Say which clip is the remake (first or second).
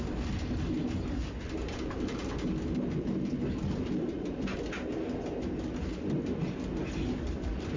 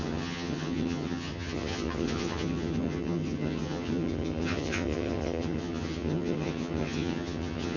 second